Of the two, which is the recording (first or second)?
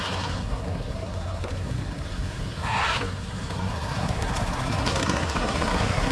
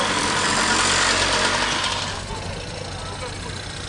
second